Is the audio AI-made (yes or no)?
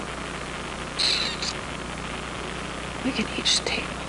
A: no